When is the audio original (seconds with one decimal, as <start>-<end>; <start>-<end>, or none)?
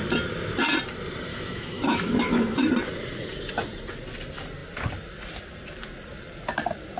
0.0-1.3; 2.7-7.0